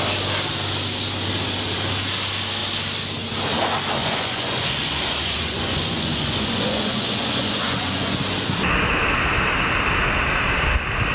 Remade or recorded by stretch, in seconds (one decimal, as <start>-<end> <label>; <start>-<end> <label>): 0.0-4.0 recorded; 4.0-8.2 remade; 8.2-11.1 recorded